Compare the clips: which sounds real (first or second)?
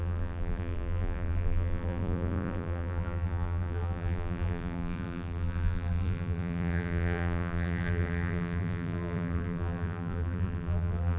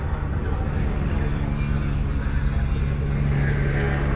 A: second